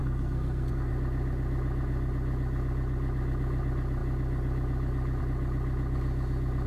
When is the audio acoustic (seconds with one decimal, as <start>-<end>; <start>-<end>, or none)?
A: 0.9-6.7

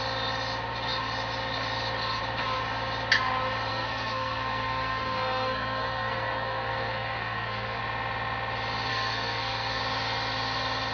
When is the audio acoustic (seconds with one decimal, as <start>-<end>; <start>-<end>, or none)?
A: 0.0-3.7; 7.8-8.9; 9.8-10.9

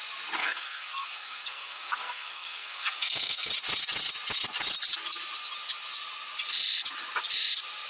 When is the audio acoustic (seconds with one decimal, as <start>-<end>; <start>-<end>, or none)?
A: 0.0-0.4; 3.5-7.9

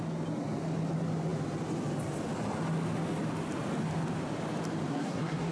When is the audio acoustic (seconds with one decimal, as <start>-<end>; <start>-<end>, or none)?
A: 0.0-4.9

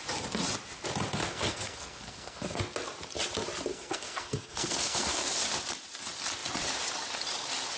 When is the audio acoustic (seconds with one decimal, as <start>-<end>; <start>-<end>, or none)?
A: 0.0-1.2; 2.6-3.7; 5.3-7.8

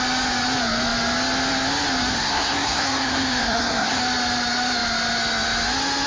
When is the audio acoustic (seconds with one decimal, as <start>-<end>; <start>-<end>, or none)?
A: 0.0-2.1; 4.0-6.1

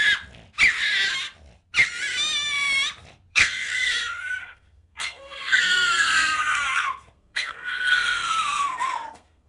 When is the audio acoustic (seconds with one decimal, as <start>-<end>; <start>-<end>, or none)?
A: 0.0-3.3; 3.9-4.4